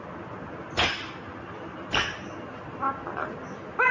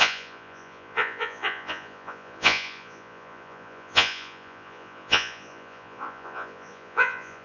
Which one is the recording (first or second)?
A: first